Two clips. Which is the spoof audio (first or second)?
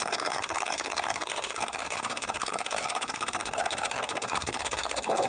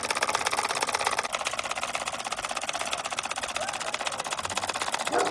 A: first